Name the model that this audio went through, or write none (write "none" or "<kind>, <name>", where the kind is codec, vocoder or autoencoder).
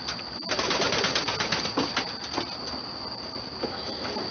none